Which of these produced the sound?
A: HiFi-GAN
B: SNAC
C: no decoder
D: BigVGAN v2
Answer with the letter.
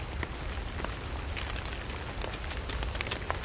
C